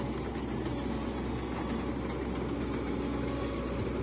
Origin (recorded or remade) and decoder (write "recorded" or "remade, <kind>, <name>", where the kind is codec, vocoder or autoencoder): recorded